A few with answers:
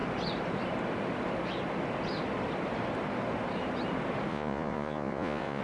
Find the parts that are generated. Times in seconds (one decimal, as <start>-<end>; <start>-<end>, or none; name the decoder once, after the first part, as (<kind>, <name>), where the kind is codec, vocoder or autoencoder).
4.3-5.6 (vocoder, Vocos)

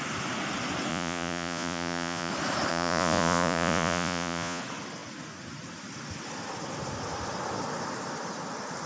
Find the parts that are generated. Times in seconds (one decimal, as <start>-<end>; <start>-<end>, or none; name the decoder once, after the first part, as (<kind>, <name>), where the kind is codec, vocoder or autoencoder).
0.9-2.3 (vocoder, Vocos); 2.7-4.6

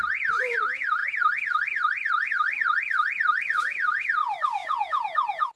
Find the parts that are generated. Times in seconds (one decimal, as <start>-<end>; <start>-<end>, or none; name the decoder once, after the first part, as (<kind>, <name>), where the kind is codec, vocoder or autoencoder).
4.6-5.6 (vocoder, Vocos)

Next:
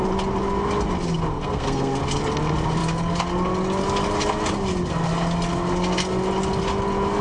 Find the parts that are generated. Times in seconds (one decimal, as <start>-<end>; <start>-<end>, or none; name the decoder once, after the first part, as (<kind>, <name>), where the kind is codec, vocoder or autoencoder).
1.3-2.0 (codec, SNAC)